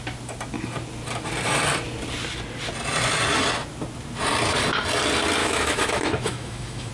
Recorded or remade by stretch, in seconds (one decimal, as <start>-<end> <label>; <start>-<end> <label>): 0.0-5.4 recorded; 5.4-6.9 remade